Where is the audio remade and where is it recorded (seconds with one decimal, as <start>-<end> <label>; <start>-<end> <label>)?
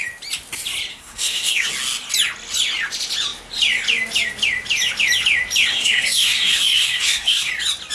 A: 0.0-0.9 recorded; 0.9-1.7 remade; 1.7-5.7 recorded; 5.7-7.5 remade; 7.5-7.9 recorded